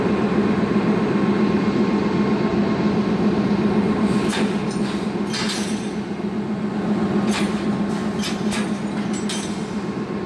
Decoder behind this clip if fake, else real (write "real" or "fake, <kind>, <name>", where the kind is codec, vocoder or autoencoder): real